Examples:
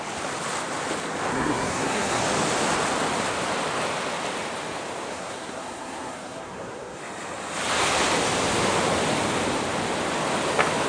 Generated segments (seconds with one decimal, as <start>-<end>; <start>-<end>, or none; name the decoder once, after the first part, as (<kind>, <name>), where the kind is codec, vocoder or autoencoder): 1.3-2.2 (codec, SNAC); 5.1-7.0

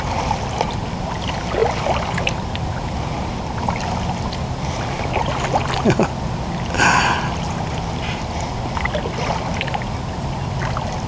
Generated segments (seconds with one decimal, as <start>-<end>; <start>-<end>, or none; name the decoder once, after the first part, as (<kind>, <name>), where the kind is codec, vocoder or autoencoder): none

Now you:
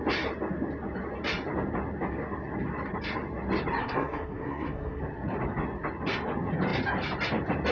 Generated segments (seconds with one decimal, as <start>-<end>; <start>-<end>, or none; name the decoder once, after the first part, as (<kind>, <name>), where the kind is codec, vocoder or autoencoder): 3.8-5.0 (codec, SNAC)

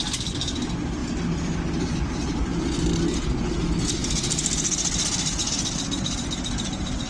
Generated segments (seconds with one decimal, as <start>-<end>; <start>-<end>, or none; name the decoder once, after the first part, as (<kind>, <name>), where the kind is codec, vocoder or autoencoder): none

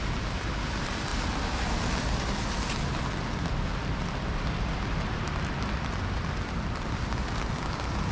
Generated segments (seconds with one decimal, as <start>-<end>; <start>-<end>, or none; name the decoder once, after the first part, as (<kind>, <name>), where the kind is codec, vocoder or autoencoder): none

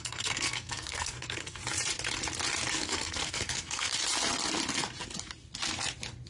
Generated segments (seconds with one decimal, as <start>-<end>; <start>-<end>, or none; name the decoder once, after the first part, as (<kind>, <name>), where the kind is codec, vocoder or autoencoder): 0.0-1.6 (codec, SNAC); 2.7-3.9